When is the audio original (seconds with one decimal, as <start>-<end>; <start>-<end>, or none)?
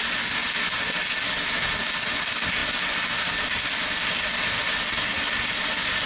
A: 0.0-6.1